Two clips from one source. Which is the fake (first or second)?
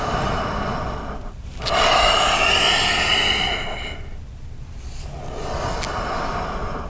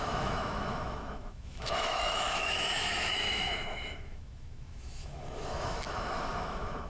second